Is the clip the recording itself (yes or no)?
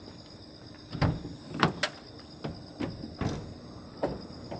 yes